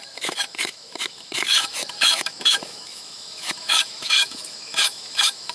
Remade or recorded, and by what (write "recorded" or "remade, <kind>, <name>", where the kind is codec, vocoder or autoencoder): remade, autoencoder, DAC-VAE